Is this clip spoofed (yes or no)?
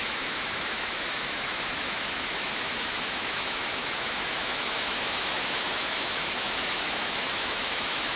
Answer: yes